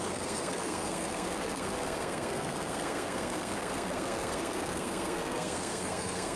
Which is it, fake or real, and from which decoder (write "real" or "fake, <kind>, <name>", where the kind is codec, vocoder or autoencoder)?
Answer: fake, codec, SNAC